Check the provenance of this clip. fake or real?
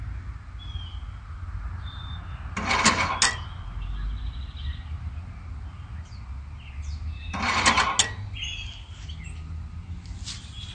real